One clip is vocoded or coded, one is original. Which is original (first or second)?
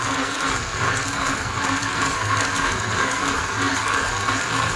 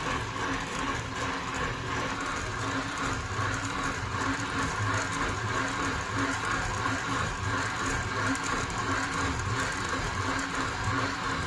second